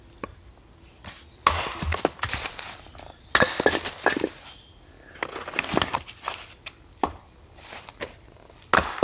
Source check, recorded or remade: recorded